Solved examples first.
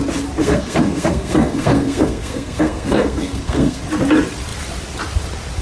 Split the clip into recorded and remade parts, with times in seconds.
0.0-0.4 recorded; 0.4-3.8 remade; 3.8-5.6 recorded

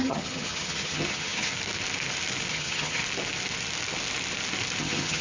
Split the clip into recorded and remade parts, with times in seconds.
0.0-1.5 remade; 1.5-2.5 recorded; 2.5-3.0 remade; 3.0-4.8 recorded; 4.8-5.2 remade

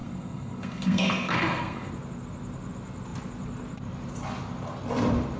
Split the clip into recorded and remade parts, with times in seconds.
0.0-1.9 remade; 1.9-5.4 recorded

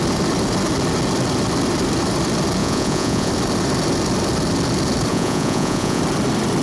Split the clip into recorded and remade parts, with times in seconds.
0.0-2.6 recorded; 2.6-3.3 remade; 3.3-5.1 recorded; 5.1-6.0 remade; 6.0-6.6 recorded

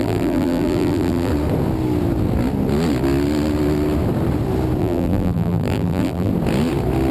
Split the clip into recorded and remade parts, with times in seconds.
0.0-1.3 remade; 1.3-4.8 recorded; 4.8-6.3 remade; 6.3-7.1 recorded

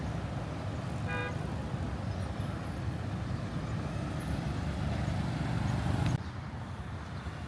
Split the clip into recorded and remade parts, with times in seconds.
0.0-7.5 recorded

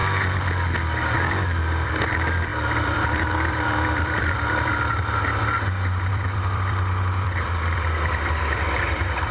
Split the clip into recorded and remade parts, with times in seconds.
0.0-1.6 recorded; 1.6-5.4 remade; 5.4-6.1 recorded; 6.1-9.3 remade